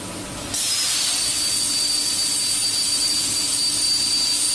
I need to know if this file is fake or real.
real